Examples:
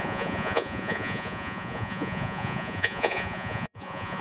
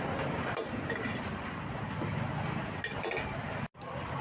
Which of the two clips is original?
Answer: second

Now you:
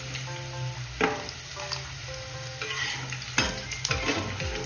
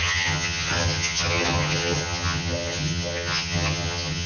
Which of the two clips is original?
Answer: first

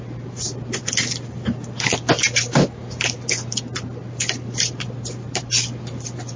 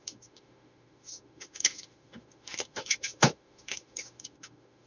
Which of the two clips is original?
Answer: first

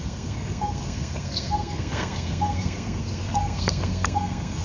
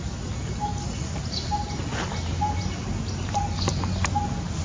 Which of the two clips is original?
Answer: second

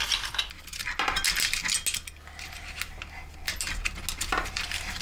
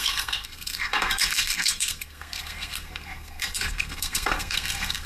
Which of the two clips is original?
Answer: first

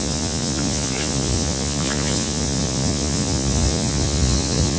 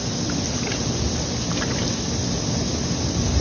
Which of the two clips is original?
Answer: second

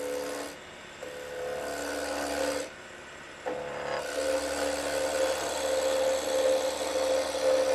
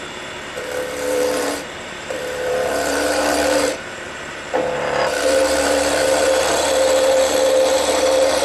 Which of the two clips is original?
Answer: first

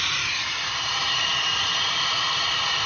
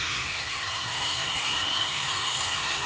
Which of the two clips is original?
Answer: first